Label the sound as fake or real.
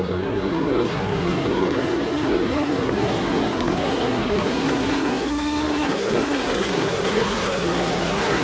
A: fake